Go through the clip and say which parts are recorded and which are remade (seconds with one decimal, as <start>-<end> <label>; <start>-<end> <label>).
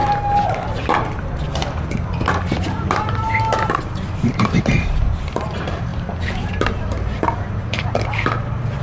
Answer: 0.0-3.7 recorded; 3.7-5.9 remade; 5.9-6.8 recorded; 6.8-8.8 remade